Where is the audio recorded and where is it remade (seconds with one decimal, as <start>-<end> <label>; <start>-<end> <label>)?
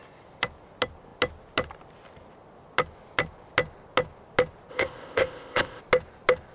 0.0-4.7 recorded; 4.7-5.8 remade; 5.8-6.5 recorded